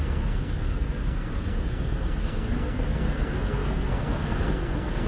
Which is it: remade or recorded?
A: remade